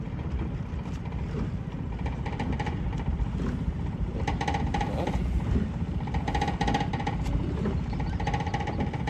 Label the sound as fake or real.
real